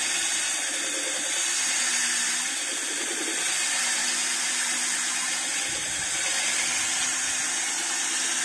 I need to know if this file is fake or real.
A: real